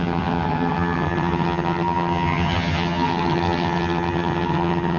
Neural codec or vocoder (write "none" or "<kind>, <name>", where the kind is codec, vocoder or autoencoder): vocoder, HiFi-GAN